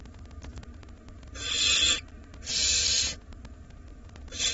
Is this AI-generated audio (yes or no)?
no